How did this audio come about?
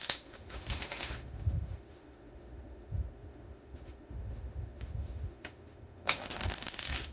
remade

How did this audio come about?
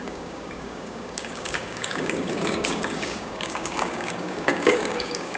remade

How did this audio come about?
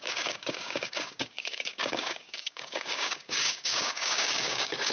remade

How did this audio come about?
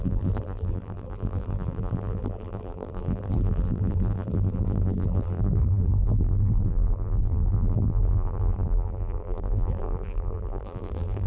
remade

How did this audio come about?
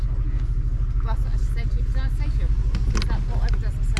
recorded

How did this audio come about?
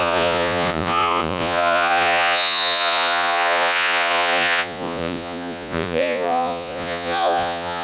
remade